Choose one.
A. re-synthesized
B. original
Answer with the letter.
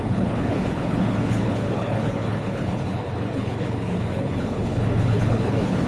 A